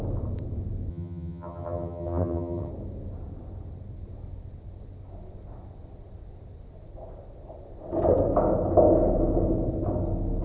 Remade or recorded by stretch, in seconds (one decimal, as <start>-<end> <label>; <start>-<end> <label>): 0.0-0.9 recorded; 0.9-2.7 remade; 2.7-10.4 recorded